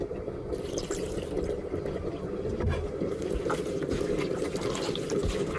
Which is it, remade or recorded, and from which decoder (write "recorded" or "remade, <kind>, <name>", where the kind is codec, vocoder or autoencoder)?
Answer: recorded